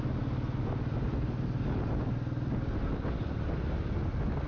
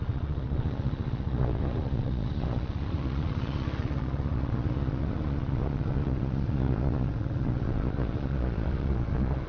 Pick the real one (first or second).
first